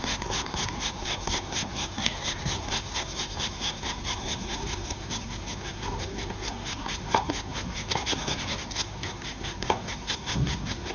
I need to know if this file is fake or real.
fake